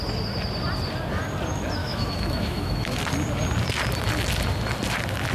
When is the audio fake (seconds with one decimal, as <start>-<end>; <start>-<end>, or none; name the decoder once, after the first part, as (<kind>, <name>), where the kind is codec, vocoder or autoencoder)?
1.8-3.0 (autoencoder, DAC-VAE)